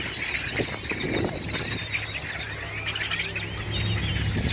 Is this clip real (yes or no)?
yes